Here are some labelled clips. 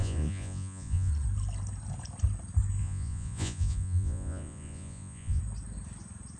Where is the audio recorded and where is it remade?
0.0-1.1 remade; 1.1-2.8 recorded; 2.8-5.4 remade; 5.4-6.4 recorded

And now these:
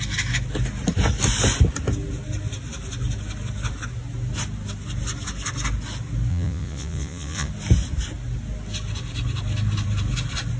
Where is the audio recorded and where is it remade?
0.0-6.3 recorded; 6.3-7.5 remade; 7.5-10.6 recorded

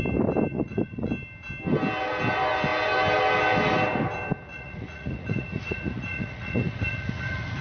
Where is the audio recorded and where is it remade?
0.0-0.5 recorded; 0.5-1.1 remade; 1.1-4.5 recorded; 4.5-7.6 remade

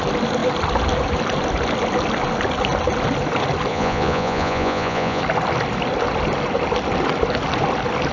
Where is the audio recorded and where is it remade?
0.0-3.7 recorded; 3.7-5.2 remade; 5.2-8.1 recorded

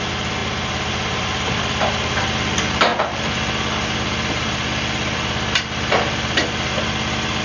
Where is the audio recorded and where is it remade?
0.0-7.4 recorded

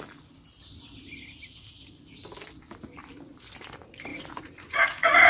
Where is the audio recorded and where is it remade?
0.0-4.1 recorded; 4.1-5.3 remade

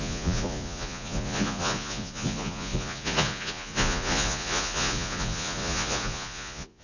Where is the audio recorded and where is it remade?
0.0-6.8 remade

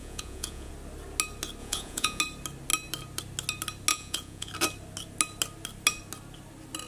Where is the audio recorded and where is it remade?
0.0-0.7 remade; 0.7-1.6 recorded; 1.6-2.2 remade; 2.2-3.9 recorded; 3.9-4.5 remade; 4.5-6.9 recorded